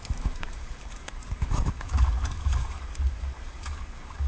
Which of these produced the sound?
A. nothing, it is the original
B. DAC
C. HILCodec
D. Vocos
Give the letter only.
B